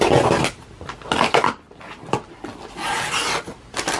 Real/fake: real